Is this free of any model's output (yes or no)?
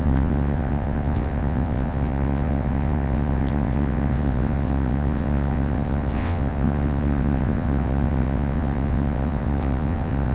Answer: no